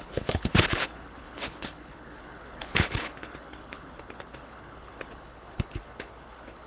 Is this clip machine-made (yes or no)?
yes